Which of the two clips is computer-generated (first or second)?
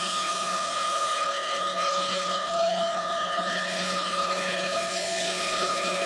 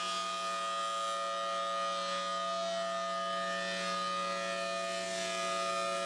first